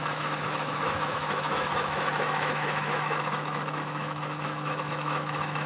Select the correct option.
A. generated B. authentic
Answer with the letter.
A